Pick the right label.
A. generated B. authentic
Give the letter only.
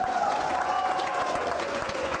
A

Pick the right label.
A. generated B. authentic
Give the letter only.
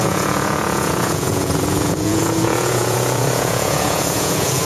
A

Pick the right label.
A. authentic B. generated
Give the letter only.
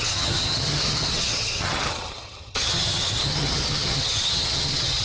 B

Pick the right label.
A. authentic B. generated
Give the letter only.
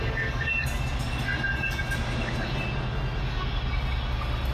A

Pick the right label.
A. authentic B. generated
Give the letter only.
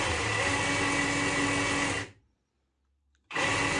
A